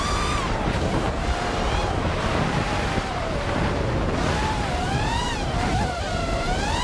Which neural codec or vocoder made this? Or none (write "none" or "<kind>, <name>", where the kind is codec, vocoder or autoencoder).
vocoder, BigVGAN v2